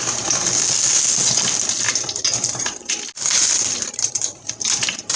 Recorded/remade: recorded